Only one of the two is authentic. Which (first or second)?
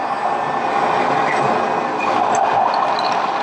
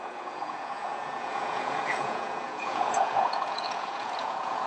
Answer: first